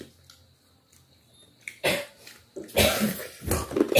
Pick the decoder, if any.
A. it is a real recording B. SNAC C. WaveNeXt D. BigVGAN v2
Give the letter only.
A